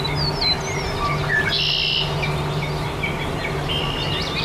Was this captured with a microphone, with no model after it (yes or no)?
yes